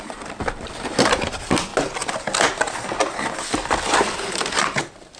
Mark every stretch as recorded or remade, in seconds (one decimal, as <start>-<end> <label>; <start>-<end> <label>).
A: 0.0-1.7 remade; 1.7-4.8 recorded; 4.8-5.2 remade